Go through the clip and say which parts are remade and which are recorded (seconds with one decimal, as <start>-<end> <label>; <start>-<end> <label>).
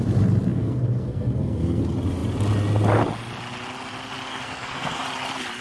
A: 0.0-0.5 recorded; 0.5-1.8 remade; 1.8-4.3 recorded; 4.3-5.0 remade; 5.0-5.6 recorded